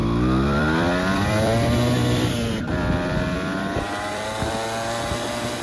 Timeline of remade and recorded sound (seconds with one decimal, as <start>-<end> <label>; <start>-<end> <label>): 0.0-5.6 remade